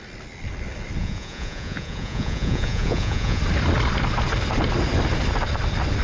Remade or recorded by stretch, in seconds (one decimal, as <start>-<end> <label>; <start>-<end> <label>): 0.0-1.0 recorded; 1.0-3.4 remade; 3.4-6.0 recorded